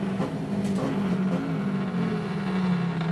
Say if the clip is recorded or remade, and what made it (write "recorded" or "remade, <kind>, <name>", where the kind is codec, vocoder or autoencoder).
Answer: recorded